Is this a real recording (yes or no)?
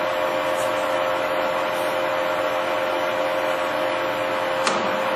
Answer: yes